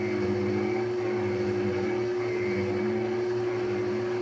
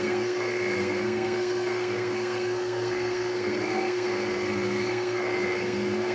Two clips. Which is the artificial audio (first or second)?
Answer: second